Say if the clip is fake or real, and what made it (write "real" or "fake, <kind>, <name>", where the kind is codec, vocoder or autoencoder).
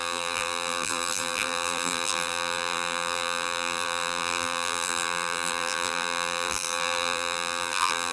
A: fake, vocoder, BigVGAN v2